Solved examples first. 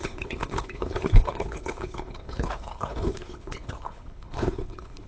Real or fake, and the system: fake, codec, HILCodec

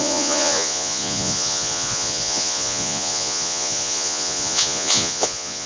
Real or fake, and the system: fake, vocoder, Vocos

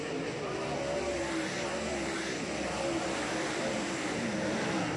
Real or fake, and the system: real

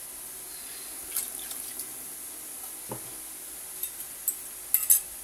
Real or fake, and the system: real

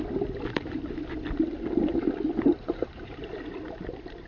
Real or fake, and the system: real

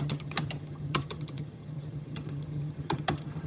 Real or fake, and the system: fake, vocoder, HiFi-GAN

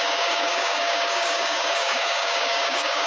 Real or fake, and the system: fake, codec, DAC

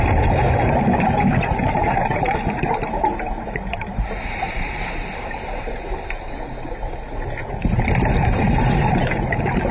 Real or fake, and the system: fake, vocoder, BigVGAN v2